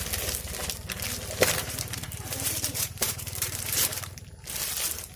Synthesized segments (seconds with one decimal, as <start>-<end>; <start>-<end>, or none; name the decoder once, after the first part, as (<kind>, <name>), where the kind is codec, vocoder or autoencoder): 1.6-4.1 (vocoder, BigVGAN v2)